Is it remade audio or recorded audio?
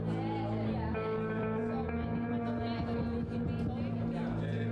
recorded